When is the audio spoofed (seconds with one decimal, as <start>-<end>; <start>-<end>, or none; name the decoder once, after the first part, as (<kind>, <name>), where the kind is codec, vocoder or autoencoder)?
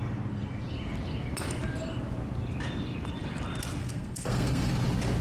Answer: 3.8-4.7 (codec, SNAC)